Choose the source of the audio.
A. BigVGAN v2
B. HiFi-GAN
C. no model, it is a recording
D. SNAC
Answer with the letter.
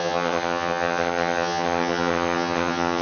B